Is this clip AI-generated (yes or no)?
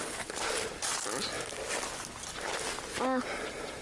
no